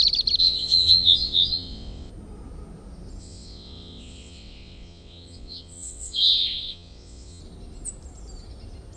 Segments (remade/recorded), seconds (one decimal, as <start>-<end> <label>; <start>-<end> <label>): 0.0-0.4 recorded; 0.4-2.1 remade; 2.1-3.2 recorded; 3.2-7.4 remade; 7.4-9.0 recorded